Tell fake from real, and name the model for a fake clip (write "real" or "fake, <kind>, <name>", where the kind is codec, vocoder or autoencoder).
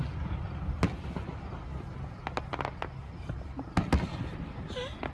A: real